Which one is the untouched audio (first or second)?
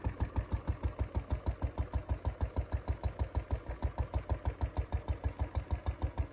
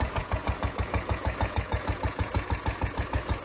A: first